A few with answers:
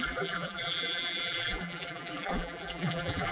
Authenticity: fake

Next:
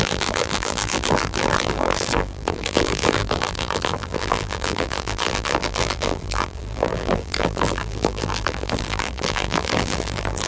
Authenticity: fake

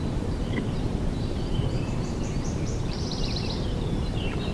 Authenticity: fake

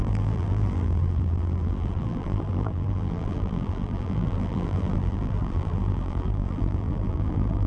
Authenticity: fake